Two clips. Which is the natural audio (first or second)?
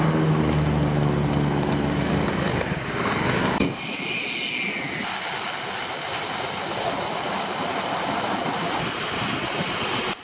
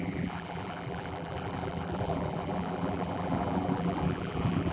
first